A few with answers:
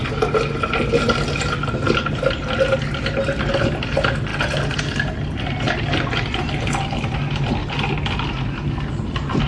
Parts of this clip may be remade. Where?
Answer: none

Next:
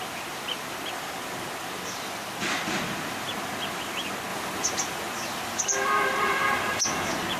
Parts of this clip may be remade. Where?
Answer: none

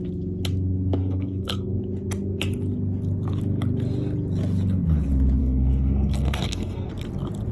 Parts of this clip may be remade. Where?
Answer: 1.0-1.8 (codec, SNAC); 5.4-6.9

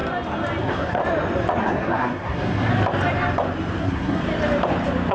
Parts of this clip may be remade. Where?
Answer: 0.6-1.0 (codec, SNAC); 1.6-2.7; 3.8-4.2